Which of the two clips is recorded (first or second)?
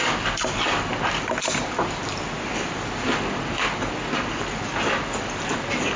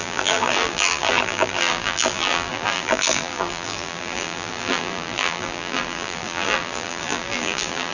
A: first